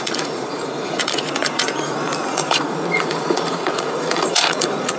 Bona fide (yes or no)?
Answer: no